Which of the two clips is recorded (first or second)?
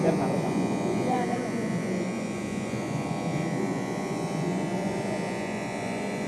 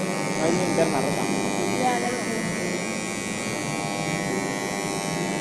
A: second